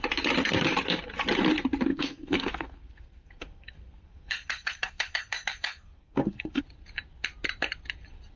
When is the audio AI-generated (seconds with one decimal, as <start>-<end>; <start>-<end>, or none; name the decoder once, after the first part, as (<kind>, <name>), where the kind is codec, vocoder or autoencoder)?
1.9-6.6 (codec, SNAC)